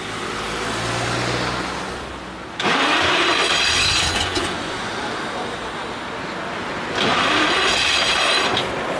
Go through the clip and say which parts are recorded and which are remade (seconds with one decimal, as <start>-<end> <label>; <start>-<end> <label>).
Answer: 0.0-4.0 recorded; 4.0-4.9 remade; 4.9-9.0 recorded